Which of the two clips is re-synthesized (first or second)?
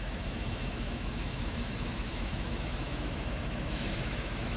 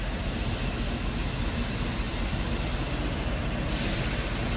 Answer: first